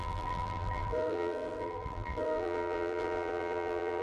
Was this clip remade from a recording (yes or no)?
yes